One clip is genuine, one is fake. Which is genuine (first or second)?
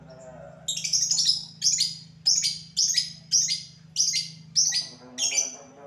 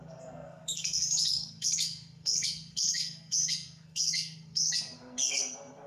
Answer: first